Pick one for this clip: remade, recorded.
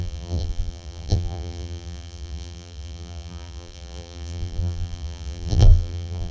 remade